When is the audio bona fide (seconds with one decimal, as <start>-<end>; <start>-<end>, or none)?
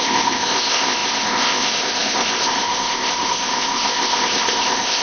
none